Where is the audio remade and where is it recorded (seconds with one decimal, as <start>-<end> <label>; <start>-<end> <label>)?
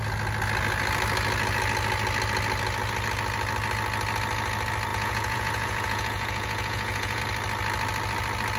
0.0-4.9 recorded; 4.9-7.2 remade; 7.2-8.6 recorded